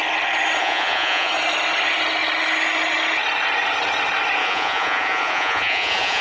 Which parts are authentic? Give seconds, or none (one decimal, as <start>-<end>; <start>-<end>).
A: 0.0-0.6; 1.3-4.4